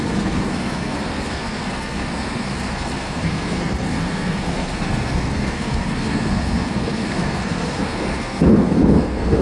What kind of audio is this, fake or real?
fake